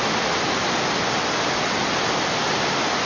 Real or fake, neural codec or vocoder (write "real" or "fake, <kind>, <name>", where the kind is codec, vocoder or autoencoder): real